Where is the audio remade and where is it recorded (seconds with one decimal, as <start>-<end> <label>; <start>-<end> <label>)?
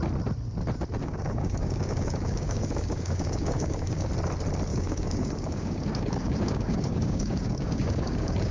0.0-1.0 recorded; 1.0-4.1 remade; 4.1-4.7 recorded; 4.7-8.5 remade